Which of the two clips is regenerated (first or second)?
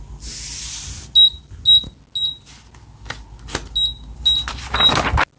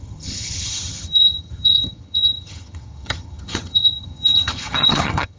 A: second